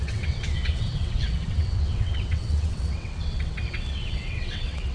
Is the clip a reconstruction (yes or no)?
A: yes